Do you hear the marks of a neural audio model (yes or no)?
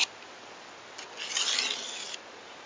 no